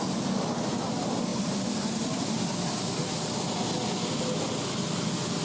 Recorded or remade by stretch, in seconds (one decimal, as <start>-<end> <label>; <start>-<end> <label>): 0.0-5.4 recorded